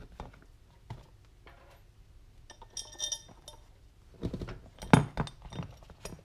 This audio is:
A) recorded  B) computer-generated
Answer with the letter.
A